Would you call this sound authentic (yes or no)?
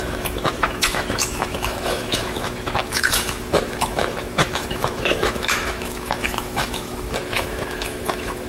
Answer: no